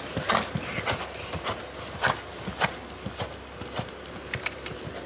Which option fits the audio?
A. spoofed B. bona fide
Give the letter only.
B